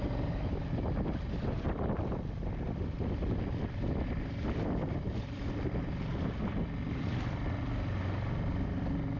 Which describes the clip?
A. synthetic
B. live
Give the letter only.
A